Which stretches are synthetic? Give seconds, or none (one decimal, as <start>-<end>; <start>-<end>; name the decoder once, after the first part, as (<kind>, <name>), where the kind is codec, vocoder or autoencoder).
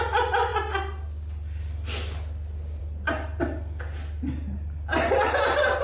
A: none